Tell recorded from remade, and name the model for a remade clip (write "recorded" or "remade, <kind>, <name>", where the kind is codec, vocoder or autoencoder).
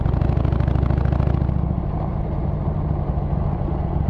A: recorded